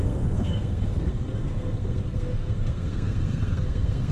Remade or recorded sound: remade